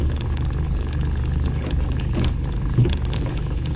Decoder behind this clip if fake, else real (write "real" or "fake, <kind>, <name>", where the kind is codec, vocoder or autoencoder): fake, codec, HILCodec